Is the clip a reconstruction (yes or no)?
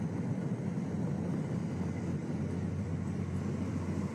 no